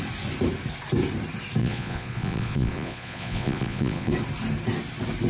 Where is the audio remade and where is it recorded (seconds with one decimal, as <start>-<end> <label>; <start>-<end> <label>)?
0.0-1.6 recorded; 1.6-4.1 remade; 4.1-5.3 recorded